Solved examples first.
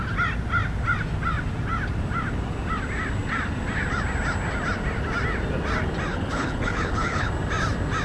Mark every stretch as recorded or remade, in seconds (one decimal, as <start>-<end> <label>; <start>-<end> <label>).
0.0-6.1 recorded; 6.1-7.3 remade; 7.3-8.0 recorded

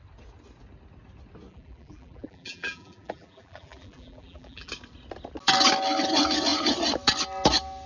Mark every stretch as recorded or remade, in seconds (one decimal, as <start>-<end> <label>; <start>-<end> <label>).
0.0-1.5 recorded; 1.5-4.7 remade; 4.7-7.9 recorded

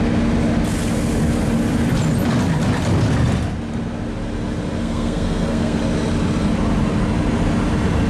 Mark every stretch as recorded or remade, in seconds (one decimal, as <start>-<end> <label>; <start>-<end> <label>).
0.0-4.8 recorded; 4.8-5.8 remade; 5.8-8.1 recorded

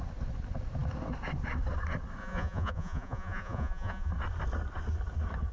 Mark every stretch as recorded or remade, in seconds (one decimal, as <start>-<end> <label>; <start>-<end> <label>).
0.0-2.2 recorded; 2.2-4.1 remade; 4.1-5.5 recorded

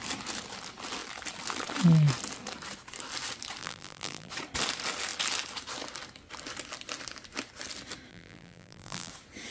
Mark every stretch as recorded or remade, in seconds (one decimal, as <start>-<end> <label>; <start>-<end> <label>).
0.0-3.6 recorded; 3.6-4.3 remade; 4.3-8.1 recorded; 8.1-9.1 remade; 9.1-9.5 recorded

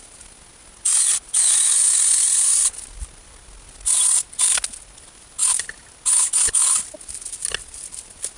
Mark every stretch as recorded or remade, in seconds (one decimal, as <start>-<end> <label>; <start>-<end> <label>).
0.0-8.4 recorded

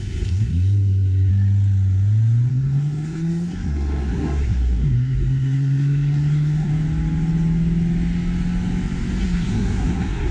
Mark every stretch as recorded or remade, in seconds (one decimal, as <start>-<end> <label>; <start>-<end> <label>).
0.0-1.3 remade; 1.3-2.5 recorded; 2.5-6.7 remade; 6.7-9.2 recorded; 9.2-10.3 remade

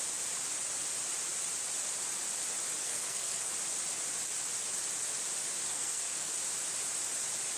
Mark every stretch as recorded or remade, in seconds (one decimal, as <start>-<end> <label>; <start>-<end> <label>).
0.0-2.8 recorded; 2.8-3.5 remade; 3.5-5.7 recorded; 5.7-6.3 remade; 6.3-7.6 recorded